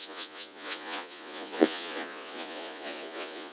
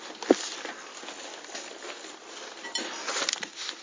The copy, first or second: first